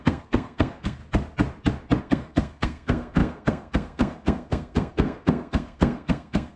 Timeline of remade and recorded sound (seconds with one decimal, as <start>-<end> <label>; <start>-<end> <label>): 0.0-1.0 remade; 1.0-2.0 recorded; 2.0-6.6 remade